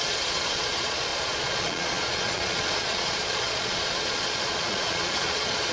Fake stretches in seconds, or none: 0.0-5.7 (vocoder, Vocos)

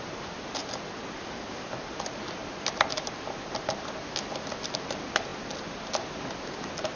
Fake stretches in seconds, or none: none

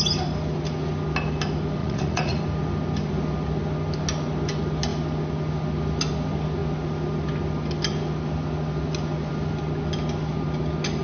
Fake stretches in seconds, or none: 1.8-2.4 (vocoder, Vocos)

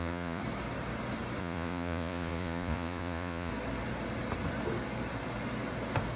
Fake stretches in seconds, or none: 0.0-0.4 (vocoder, Vocos); 1.4-3.5